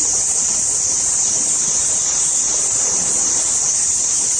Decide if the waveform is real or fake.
fake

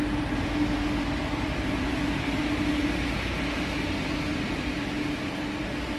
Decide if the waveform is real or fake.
real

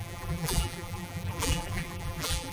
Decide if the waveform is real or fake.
fake